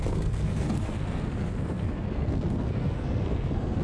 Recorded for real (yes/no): no